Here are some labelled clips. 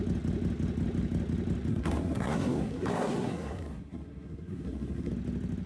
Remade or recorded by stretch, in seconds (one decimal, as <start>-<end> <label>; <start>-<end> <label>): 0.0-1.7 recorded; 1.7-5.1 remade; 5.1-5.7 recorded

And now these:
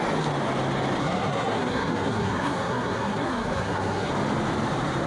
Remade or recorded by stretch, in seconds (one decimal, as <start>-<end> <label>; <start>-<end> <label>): 0.0-1.0 recorded; 1.0-4.1 remade; 4.1-5.1 recorded

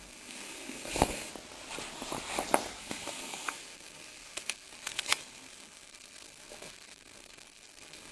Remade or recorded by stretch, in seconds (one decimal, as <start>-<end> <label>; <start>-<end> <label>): 0.0-1.3 remade; 1.3-2.8 recorded; 2.8-8.1 remade

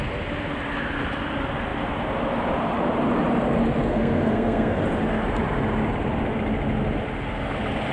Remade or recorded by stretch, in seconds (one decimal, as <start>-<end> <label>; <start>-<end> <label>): 0.0-3.8 recorded; 3.8-4.8 remade; 4.8-7.9 recorded

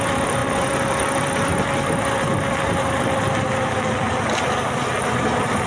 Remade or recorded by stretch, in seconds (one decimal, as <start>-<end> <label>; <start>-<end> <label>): 0.0-5.7 recorded

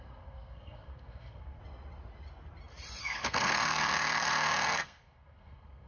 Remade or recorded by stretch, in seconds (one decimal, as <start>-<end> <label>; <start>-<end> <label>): 0.0-1.6 remade; 1.6-3.0 recorded; 3.0-5.9 remade